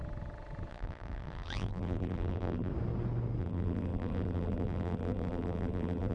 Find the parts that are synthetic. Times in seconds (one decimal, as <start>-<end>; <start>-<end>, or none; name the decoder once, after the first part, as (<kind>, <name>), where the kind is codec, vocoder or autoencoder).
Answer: 0.7-2.7 (vocoder, BigVGAN v2); 3.4-6.1